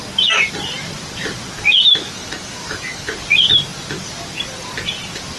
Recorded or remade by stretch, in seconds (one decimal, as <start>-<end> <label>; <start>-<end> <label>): 0.0-1.9 recorded; 1.9-3.1 remade; 3.1-5.4 recorded